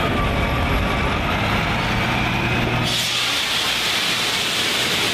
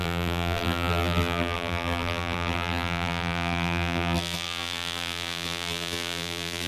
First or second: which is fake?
second